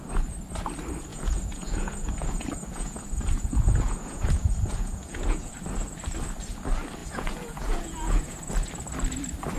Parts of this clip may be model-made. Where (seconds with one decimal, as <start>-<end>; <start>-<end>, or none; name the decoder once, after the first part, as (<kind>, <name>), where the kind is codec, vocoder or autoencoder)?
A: 1.1-5.5 (vocoder, Vocos); 7.0-8.5